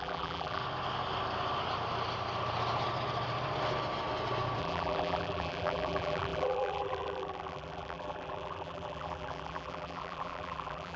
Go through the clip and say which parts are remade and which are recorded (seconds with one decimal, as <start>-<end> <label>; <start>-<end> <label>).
0.0-0.6 remade; 0.6-4.6 recorded; 4.6-11.0 remade